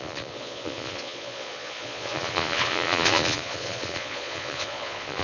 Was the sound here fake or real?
fake